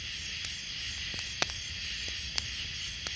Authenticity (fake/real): real